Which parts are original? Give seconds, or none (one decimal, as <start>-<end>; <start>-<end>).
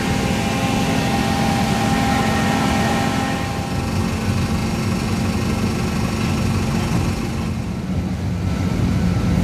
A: 0.0-9.4